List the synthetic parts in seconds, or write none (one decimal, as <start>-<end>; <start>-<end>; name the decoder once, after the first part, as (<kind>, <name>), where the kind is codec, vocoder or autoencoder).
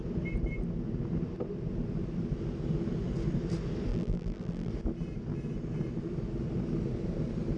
3.9-4.7 (vocoder, BigVGAN v2)